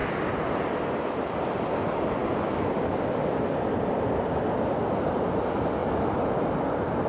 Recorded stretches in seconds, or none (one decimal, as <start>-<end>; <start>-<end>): 0.6-2.2; 5.2-7.1